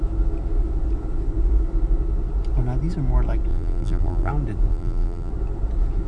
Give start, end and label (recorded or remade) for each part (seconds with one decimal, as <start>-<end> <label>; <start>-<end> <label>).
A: 0.0-3.5 recorded; 3.5-4.3 remade; 4.3-4.7 recorded; 4.7-5.3 remade; 5.3-6.1 recorded